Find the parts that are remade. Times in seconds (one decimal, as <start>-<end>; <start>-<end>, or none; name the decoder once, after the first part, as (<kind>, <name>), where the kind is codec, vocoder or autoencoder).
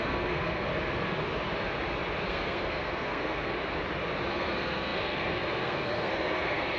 0.0-0.7 (codec, SNAC); 2.3-3.6; 4.3-6.8